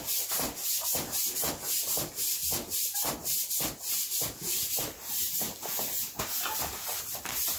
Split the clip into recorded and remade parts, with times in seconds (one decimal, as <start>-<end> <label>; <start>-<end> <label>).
0.0-7.6 recorded